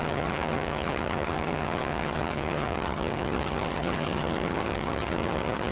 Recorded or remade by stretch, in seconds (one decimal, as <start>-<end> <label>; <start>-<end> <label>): 0.0-5.7 remade